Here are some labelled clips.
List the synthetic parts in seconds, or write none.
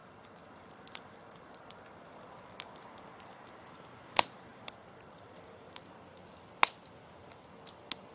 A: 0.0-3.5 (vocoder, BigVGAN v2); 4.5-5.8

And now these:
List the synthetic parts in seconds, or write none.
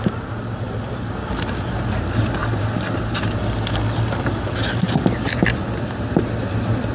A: none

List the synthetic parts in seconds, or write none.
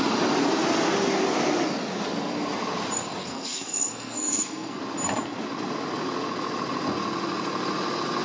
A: 3.2-4.8 (codec, SNAC)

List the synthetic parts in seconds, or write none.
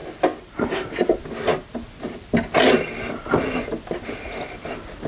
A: none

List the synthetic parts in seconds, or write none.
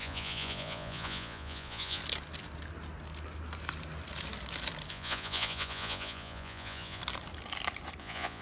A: 0.0-2.0 (vocoder, Vocos); 4.9-7.0; 8.0-8.4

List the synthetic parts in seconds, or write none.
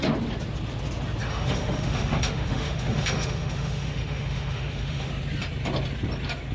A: 1.2-5.1 (autoencoder, DAC-VAE)